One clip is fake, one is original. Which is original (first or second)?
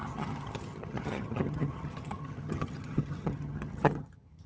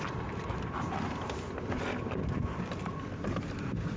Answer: second